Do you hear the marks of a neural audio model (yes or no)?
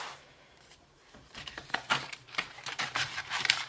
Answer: yes